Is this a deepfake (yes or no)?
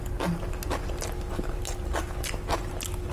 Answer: no